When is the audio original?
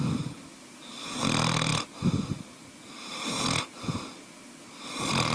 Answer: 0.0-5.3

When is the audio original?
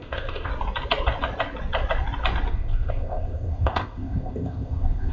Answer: 0.5-2.5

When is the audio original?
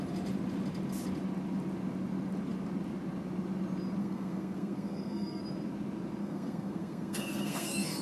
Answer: 0.0-4.0; 5.4-6.2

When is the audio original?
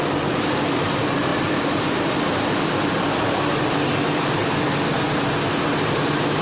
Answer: 4.4-5.4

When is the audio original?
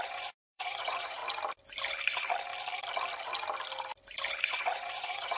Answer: 1.2-4.4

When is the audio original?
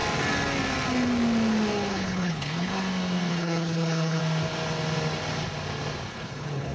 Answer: 0.0-1.9; 2.7-3.3; 4.2-6.1